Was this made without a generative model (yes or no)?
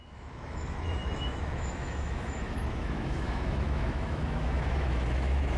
no